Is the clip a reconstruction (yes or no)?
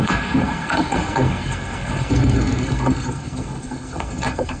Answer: yes